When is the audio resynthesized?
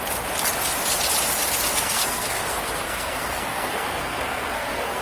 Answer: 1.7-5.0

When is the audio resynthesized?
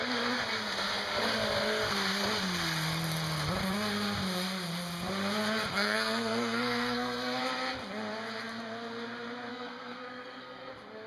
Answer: 5.7-7.4; 9.5-10.7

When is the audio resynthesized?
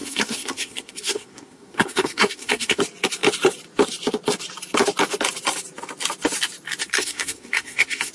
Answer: 0.0-2.8; 6.8-8.1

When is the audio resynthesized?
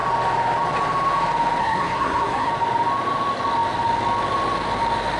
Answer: 1.6-2.5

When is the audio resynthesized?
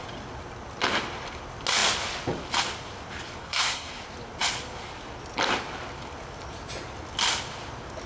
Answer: 3.4-4.0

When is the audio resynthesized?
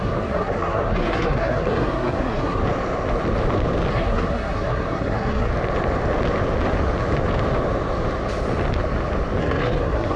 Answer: 0.0-2.6; 3.9-5.5; 9.4-10.2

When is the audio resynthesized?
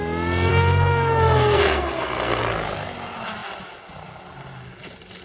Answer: 0.5-2.4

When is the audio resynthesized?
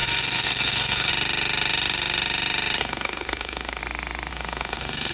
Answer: 0.0-1.1; 2.8-3.8; 4.3-5.1